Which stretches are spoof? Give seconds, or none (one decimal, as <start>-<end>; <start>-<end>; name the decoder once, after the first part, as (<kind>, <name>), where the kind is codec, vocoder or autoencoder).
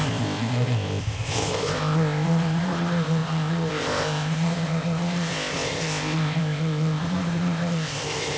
0.0-8.4 (codec, ZipCodec)